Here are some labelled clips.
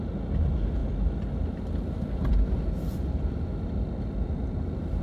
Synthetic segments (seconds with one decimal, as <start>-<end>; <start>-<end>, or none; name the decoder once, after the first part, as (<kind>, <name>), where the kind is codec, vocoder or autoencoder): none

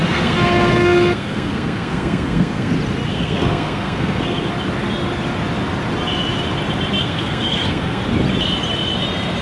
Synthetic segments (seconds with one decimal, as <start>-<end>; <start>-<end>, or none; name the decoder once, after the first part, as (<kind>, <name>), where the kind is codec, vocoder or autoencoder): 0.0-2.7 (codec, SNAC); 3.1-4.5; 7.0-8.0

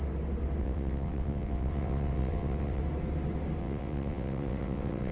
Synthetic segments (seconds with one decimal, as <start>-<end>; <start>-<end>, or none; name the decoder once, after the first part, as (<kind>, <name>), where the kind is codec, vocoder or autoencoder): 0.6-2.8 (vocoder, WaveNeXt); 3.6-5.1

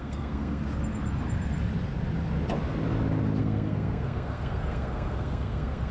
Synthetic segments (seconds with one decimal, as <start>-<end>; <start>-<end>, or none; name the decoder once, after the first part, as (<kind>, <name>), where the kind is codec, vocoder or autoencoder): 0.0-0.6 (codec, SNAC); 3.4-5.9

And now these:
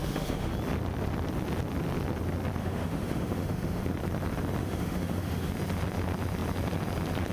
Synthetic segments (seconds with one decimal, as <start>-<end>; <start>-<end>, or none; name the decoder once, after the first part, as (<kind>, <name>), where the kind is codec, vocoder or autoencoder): 0.0-0.5 (autoencoder, DAC-VAE); 2.6-3.8; 4.6-5.5

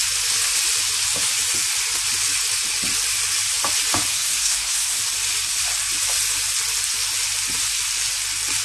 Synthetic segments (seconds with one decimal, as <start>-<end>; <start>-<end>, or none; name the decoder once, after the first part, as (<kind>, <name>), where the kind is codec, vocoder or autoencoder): 4.1-5.0 (codec, SNAC)

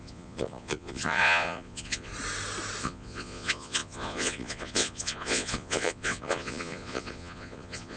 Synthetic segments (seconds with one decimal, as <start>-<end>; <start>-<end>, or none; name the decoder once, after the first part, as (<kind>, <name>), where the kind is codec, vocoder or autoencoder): 0.0-2.1 (vocoder, Vocos); 2.8-8.0